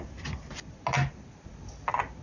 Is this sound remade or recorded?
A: recorded